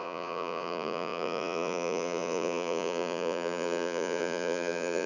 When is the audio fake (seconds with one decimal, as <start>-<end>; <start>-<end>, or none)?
0.0-5.1